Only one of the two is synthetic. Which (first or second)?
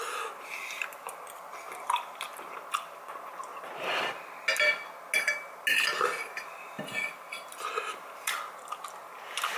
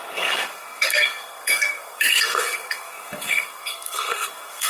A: second